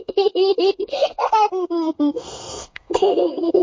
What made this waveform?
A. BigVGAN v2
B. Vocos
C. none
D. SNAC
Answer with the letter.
D